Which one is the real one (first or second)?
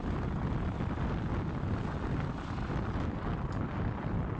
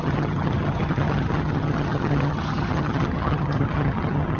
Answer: first